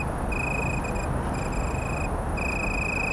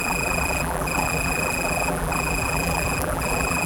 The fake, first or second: second